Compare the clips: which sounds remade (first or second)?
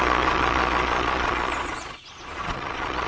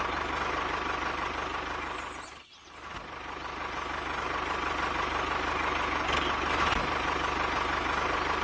first